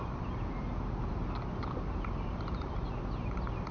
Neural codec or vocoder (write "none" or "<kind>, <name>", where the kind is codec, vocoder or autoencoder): none